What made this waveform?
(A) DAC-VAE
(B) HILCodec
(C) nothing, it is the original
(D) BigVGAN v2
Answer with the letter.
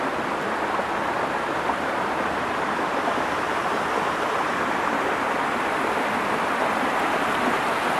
C